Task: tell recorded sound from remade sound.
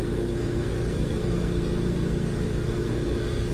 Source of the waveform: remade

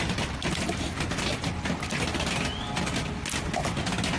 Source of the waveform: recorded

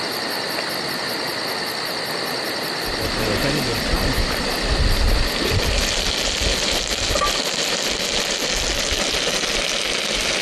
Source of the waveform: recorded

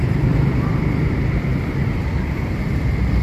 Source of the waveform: remade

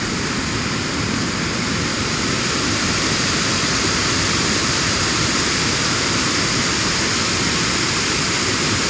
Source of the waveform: recorded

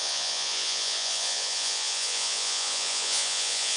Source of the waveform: remade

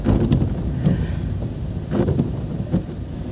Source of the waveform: recorded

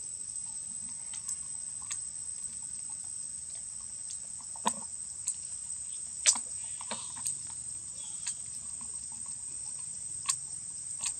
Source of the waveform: recorded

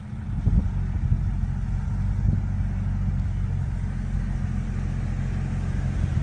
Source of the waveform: recorded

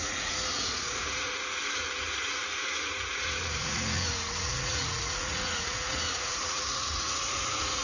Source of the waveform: remade